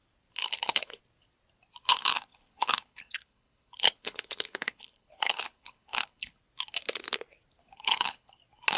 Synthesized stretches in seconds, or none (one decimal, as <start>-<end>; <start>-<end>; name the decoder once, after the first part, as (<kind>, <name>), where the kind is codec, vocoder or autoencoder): 0.4-1.0 (codec, HILCodec); 1.9-6.4; 7.6-8.4